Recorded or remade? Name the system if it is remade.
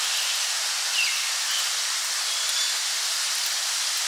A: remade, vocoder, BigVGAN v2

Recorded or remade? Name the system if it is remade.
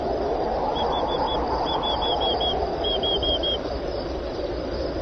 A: recorded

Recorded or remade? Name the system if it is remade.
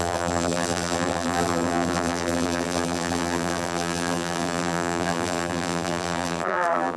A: remade, vocoder, BigVGAN v2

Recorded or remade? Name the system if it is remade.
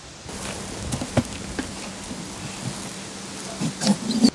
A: recorded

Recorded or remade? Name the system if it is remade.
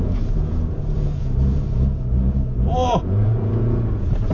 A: remade, vocoder, Vocos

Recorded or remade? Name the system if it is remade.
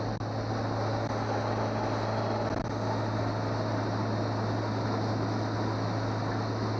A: recorded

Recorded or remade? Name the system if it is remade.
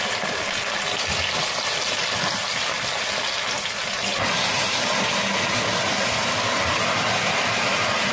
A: recorded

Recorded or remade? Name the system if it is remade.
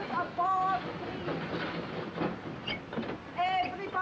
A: recorded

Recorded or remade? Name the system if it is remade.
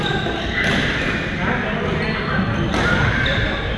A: recorded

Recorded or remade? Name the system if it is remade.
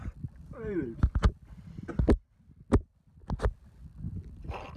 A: recorded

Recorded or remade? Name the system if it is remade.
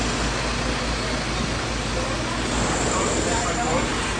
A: recorded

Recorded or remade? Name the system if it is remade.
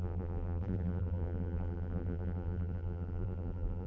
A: remade, vocoder, BigVGAN v2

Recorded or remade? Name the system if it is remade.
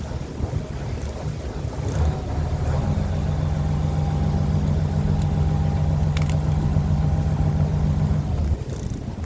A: recorded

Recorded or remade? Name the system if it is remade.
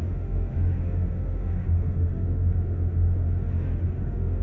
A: remade, autoencoder, DAC-VAE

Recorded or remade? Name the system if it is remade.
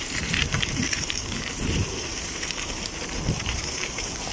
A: remade, vocoder, BigVGAN v2